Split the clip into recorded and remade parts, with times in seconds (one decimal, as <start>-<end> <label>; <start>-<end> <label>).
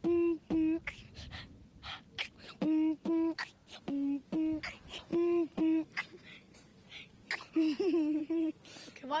0.0-5.1 recorded; 5.1-6.0 remade; 6.0-9.2 recorded